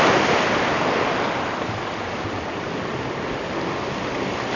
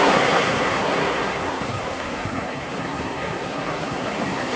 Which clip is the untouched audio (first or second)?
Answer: first